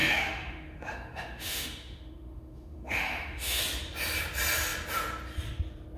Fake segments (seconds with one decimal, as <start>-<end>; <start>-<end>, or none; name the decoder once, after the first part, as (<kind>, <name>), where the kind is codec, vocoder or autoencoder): 0.0-3.6 (autoencoder, DAC-VAE)